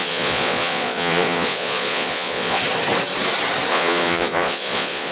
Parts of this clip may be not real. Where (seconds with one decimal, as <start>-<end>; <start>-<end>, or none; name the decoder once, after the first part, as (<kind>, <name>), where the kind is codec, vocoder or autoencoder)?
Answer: 0.0-2.6 (vocoder, Vocos); 3.7-5.1